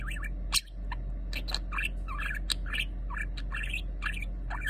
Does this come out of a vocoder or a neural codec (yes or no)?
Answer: no